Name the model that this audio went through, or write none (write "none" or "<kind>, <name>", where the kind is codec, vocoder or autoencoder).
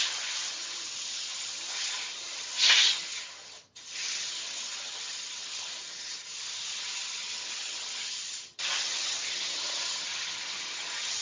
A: vocoder, HiFi-GAN